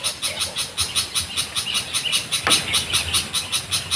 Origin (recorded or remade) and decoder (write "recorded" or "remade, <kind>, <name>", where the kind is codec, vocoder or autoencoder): recorded